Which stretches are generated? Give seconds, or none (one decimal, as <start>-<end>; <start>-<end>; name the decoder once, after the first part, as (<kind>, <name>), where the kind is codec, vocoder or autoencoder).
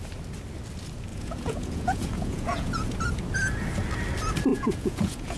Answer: 1.1-2.9 (vocoder, Vocos); 4.5-5.4